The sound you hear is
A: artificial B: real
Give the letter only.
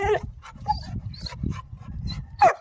B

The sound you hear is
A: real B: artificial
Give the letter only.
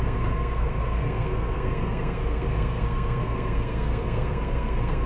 B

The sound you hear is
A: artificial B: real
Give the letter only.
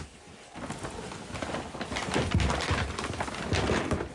B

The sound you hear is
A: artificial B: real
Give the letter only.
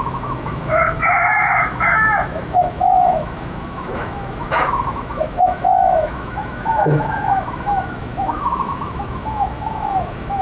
A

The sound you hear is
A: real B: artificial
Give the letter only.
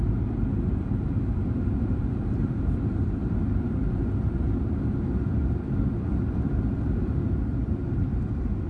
B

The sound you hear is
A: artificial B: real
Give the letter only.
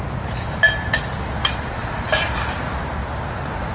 B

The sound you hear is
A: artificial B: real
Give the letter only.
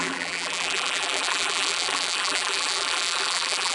A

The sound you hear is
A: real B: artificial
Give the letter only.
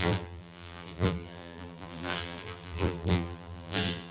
B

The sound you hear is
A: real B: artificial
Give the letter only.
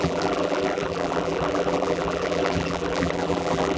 B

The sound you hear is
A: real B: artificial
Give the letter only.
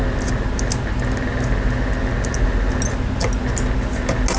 A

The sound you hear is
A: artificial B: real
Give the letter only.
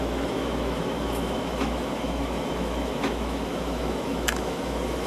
A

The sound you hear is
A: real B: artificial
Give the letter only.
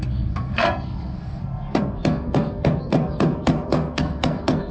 B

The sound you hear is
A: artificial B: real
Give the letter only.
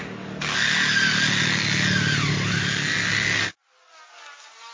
B